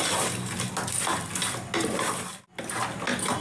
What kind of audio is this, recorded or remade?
recorded